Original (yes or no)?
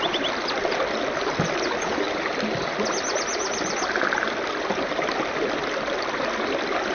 yes